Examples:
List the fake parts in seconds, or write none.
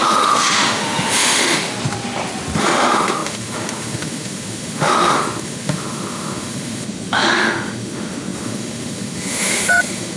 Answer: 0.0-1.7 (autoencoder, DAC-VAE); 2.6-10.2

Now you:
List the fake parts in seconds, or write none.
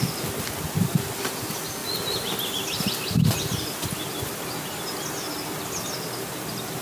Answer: none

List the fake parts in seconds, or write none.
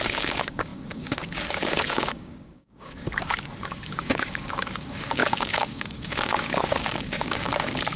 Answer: 0.0-8.0 (codec, DAC)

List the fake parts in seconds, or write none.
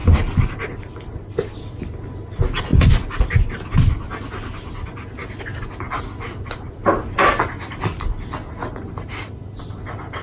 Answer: none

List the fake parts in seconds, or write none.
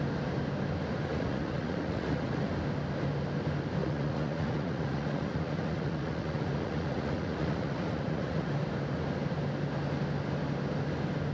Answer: 1.1-2.5 (vocoder, Vocos); 3.8-8.5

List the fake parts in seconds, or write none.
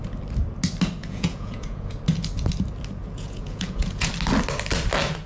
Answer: 1.0-1.9 (vocoder, Vocos); 3.0-4.1